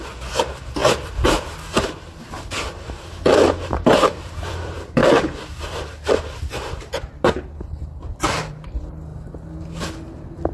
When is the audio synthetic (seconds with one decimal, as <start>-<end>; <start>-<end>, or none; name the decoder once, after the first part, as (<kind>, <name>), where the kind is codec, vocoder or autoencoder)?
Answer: 0.0-9.1 (vocoder, BigVGAN v2)